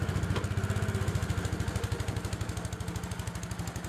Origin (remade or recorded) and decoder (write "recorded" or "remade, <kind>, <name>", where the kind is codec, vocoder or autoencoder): recorded